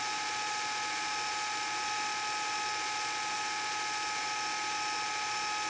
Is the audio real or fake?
real